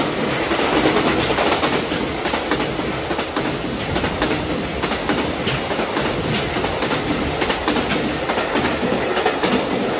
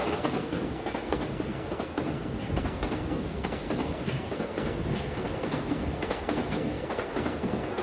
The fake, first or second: second